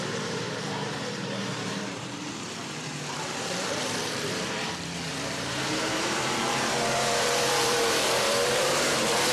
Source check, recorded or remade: remade